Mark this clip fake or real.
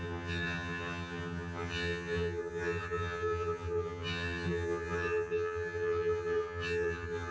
fake